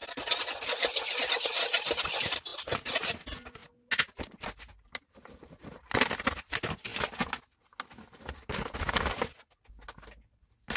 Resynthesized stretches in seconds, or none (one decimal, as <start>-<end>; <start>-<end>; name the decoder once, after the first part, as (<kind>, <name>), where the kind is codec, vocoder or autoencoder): none